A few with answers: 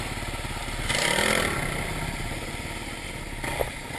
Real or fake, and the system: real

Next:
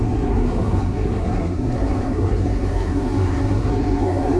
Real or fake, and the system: fake, codec, SNAC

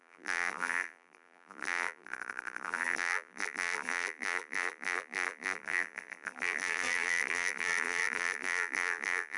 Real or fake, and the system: fake, vocoder, BigVGAN v2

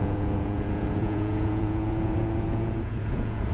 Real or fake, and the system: fake, vocoder, Vocos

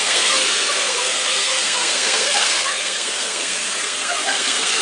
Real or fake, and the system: fake, codec, SNAC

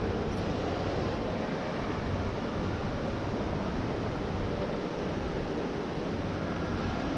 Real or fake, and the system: real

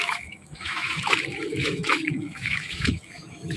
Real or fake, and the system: fake, autoencoder, DAC-VAE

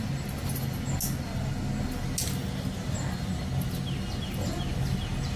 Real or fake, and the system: real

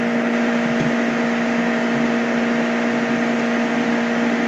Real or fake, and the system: real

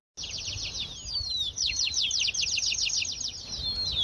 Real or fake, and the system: real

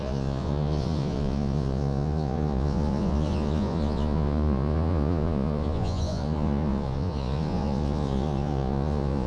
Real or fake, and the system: fake, vocoder, Vocos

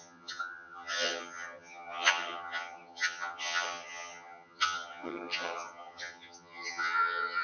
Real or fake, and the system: fake, vocoder, HiFi-GAN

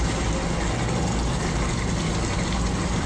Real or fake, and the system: real